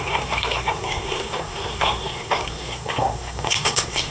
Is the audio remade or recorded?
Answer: remade